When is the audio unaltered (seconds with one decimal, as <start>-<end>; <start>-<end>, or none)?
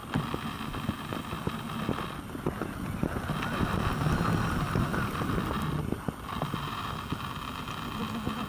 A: 0.0-8.5